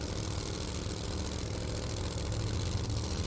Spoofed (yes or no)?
no